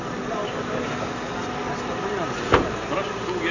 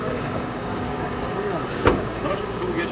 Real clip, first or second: first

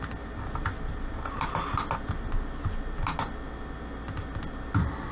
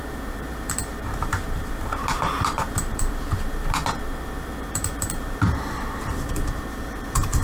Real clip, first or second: first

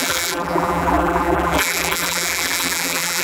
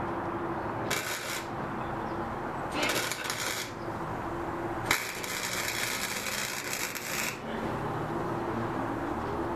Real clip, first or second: second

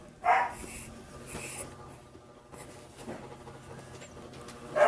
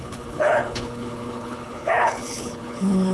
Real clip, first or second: first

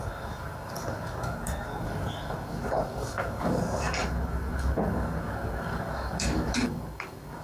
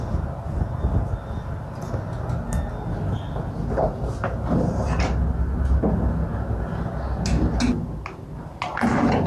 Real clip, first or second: second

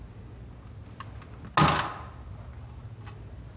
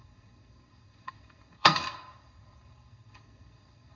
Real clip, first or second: first